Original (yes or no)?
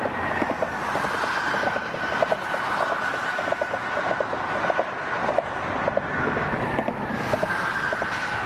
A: yes